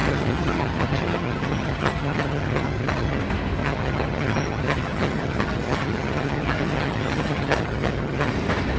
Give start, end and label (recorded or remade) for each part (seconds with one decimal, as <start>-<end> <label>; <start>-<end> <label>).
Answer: 0.0-3.2 remade; 3.2-3.6 recorded; 3.6-8.3 remade; 8.3-8.8 recorded